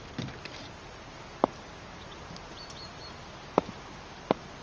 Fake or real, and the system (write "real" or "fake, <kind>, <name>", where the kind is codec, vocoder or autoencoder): real